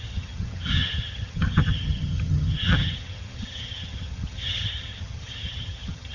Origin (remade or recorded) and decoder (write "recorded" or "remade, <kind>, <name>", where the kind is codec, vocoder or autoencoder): remade, vocoder, HiFi-GAN